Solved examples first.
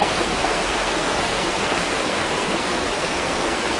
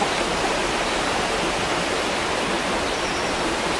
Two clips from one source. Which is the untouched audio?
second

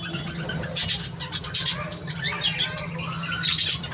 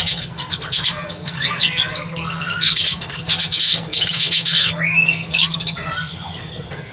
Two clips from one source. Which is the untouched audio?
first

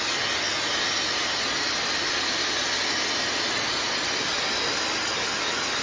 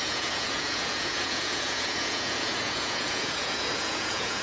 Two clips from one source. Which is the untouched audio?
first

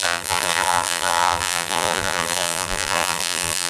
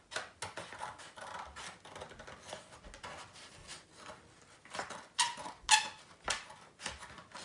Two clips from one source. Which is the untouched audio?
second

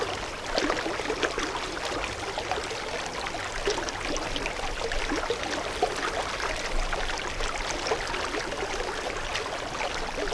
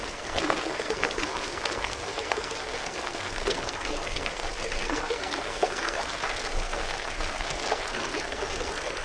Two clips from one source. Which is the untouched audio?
first